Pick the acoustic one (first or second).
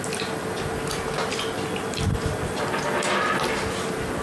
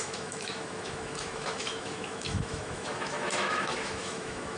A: first